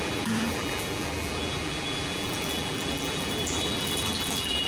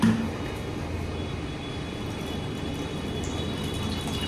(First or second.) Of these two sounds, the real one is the second